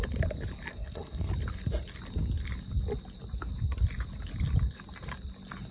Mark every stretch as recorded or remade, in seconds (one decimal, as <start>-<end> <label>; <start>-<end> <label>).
0.0-0.7 recorded; 0.7-1.3 remade; 1.3-5.7 recorded